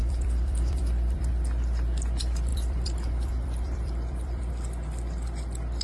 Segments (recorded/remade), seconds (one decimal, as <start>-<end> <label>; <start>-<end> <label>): 0.0-1.3 remade; 1.3-2.5 recorded; 2.5-4.5 remade; 4.5-5.8 recorded